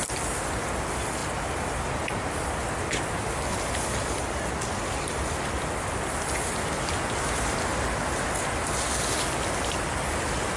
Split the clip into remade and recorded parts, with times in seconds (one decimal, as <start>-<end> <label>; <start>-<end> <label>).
0.0-10.6 recorded